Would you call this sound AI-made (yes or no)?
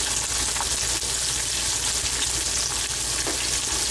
no